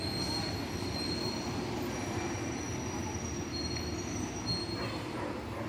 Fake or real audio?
real